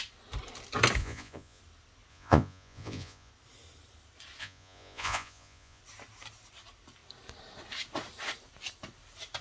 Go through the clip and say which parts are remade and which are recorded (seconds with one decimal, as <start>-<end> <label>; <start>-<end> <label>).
0.0-1.0 recorded; 1.0-1.6 remade; 1.6-2.1 recorded; 2.1-3.3 remade; 3.3-4.4 recorded; 4.4-5.8 remade; 5.8-9.4 recorded